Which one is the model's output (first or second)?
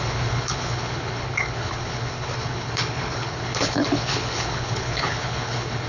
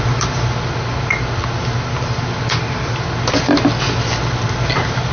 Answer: first